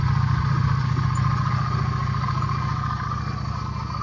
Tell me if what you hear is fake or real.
real